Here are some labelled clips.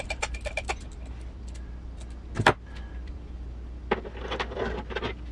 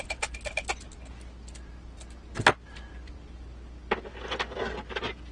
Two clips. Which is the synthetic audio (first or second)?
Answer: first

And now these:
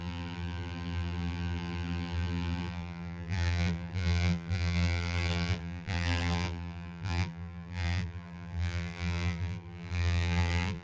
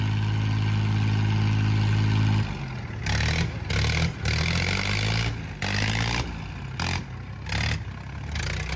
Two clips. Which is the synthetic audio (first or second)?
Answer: first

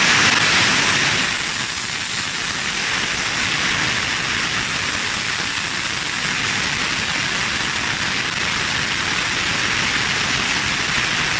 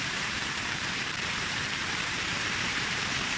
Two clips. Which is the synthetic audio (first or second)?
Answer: second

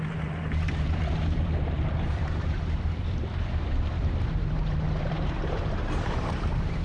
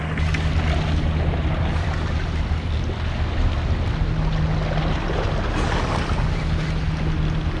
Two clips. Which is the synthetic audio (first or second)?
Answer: first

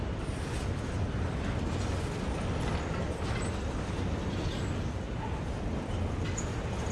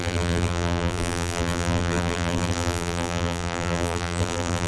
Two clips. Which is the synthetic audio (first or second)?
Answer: second